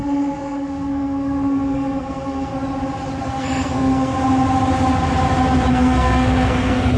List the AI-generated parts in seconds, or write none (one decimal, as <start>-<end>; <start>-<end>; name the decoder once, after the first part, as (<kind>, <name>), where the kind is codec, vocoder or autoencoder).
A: 0.0-2.5 (codec, SNAC); 3.2-4.1; 5.7-7.0